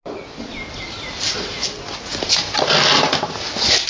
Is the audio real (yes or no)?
yes